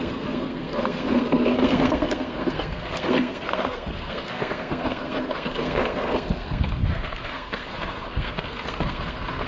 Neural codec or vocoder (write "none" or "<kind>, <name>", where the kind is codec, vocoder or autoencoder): codec, SNAC